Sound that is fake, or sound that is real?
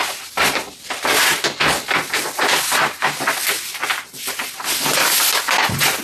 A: real